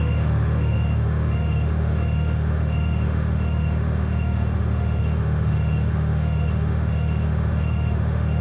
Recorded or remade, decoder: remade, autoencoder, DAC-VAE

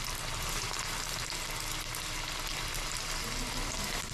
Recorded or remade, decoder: recorded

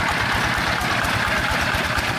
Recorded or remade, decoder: recorded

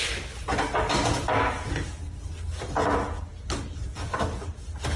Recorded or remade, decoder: recorded